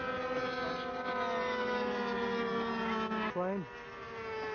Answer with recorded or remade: recorded